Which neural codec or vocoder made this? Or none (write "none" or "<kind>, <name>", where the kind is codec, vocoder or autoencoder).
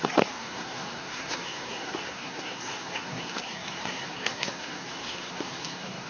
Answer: codec, SNAC